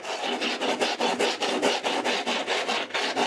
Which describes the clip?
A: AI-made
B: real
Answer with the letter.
B